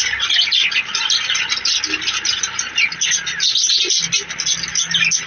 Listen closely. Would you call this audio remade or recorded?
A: recorded